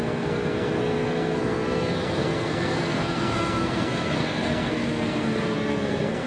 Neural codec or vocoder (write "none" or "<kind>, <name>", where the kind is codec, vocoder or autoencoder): codec, SNAC